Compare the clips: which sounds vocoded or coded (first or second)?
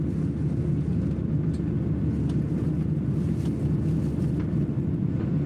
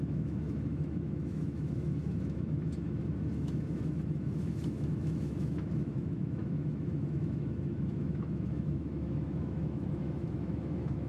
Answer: second